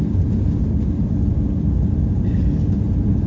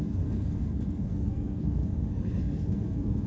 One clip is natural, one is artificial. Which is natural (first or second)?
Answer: first